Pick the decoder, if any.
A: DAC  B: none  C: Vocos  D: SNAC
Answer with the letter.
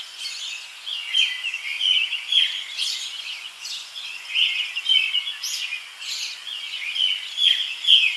C